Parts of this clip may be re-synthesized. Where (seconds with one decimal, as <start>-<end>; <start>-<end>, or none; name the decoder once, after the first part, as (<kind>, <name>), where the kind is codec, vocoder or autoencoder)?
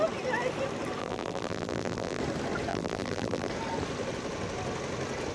1.0-2.2 (vocoder, BigVGAN v2); 2.7-3.5